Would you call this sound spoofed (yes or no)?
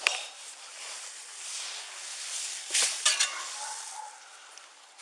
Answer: no